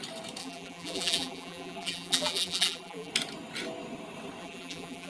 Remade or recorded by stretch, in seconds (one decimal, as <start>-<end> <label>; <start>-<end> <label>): 0.0-0.4 recorded; 0.4-3.1 remade; 3.1-4.4 recorded; 4.4-5.1 remade